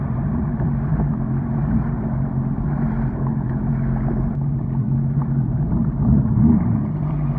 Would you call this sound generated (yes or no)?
yes